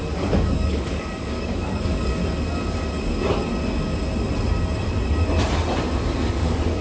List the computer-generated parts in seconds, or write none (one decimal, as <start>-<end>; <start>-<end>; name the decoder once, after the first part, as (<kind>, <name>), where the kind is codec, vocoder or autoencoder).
0.0-2.2 (codec, DAC); 6.3-6.8